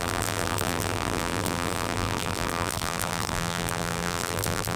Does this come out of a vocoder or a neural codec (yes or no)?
yes